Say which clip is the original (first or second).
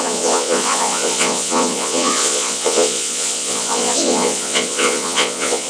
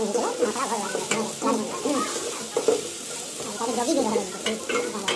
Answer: second